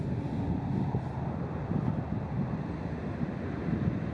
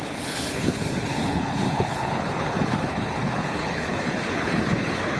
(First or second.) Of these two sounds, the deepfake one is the second